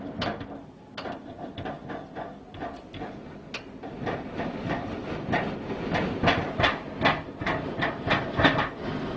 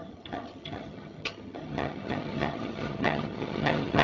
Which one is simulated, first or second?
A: second